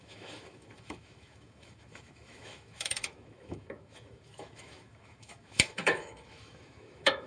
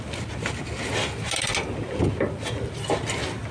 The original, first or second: second